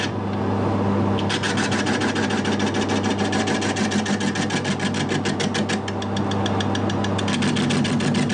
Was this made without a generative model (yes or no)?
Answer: yes